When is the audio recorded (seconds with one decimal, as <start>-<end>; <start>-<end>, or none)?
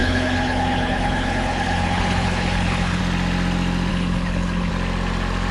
3.0-3.9; 4.7-5.5